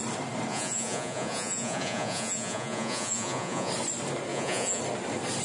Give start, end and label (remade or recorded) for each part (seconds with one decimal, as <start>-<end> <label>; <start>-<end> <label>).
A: 0.0-0.5 recorded; 0.5-3.7 remade; 3.7-4.3 recorded; 4.3-4.8 remade; 4.8-5.4 recorded